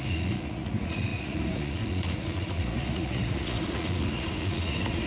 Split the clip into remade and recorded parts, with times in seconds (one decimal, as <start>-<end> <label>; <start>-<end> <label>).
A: 0.0-5.1 remade